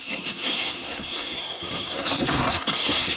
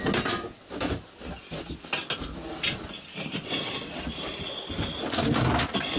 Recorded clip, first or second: second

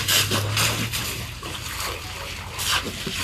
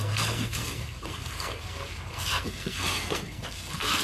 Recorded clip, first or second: first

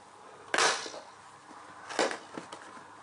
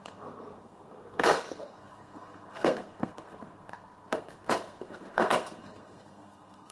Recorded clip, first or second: first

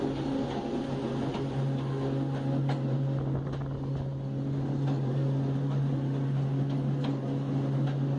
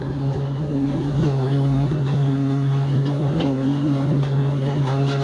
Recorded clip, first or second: first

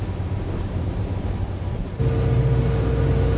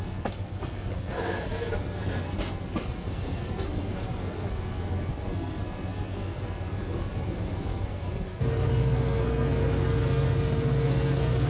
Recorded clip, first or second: first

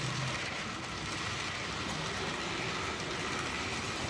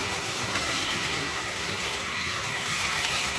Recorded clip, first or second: first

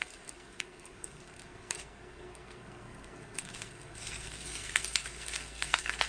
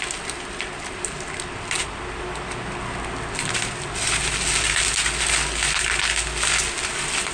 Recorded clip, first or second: second